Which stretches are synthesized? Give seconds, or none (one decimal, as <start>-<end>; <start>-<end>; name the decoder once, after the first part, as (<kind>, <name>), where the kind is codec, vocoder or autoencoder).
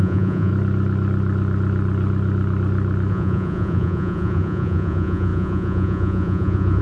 0.0-0.5 (vocoder, Vocos); 3.1-6.8